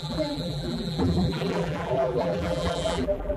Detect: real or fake fake